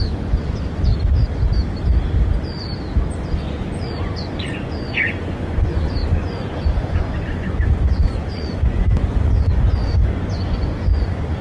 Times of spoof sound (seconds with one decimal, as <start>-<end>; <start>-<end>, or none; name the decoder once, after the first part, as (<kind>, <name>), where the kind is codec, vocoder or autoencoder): 0.0-0.9 (vocoder, Vocos); 3.2-11.4